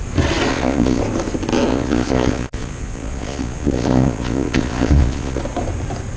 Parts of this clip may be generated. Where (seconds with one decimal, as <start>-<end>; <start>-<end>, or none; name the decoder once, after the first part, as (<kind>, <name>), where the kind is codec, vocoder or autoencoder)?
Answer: 0.5-1.0 (vocoder, Vocos); 1.7-5.4